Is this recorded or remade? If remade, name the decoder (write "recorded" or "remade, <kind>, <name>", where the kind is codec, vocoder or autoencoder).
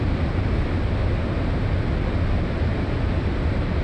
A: recorded